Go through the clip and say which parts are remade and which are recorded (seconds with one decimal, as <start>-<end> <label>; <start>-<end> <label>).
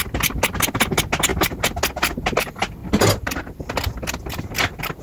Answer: 0.0-5.0 recorded